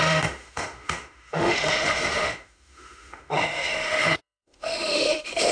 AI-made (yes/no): yes